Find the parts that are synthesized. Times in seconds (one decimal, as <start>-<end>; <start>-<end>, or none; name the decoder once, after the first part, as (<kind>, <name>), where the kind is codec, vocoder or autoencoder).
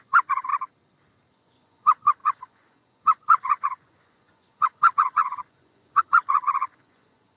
0.0-0.5 (vocoder, Vocos); 1.3-7.4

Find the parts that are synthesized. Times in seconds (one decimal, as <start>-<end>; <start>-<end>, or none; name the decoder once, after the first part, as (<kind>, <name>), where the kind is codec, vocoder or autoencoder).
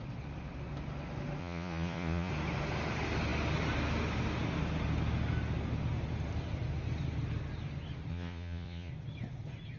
1.4-2.3 (vocoder, Vocos); 8.1-8.9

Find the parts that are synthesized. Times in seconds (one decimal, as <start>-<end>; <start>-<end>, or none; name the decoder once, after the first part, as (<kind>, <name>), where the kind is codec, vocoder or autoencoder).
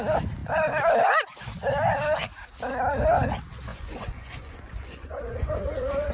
3.7-6.1 (vocoder, Vocos)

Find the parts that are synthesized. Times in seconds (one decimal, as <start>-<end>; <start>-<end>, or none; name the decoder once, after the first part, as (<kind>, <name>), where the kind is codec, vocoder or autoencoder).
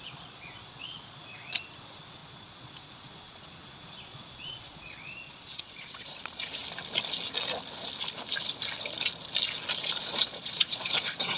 0.0-6.6 (vocoder, Vocos); 10.0-11.4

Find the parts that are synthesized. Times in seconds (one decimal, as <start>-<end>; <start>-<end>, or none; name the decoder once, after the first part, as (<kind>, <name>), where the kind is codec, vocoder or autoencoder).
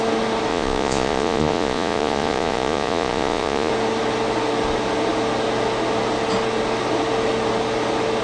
0.5-3.7 (vocoder, Vocos)